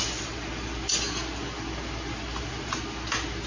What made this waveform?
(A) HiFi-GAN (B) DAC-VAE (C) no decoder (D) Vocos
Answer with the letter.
C